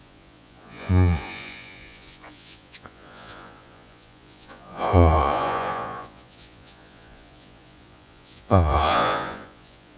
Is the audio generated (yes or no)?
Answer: yes